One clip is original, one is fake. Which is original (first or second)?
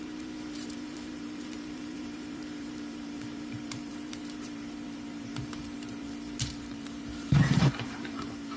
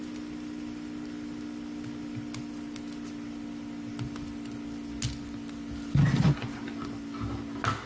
second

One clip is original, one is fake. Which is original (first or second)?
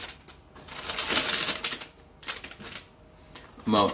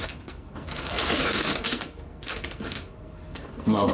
first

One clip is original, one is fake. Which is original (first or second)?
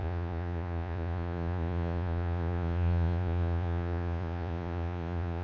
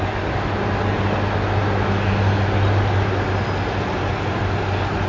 second